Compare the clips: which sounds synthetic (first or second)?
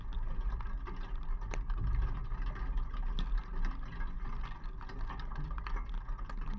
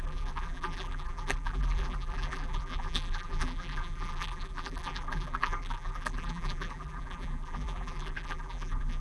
second